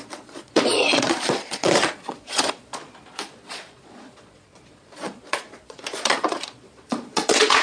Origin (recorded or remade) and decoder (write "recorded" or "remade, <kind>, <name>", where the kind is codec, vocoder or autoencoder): remade, vocoder, Vocos